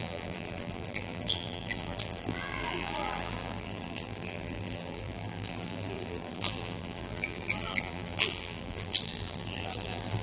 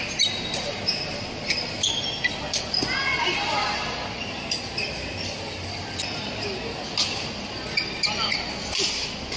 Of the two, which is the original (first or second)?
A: second